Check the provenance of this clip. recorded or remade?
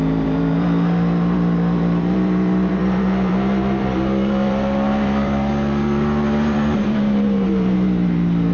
remade